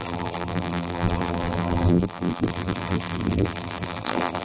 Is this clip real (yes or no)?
no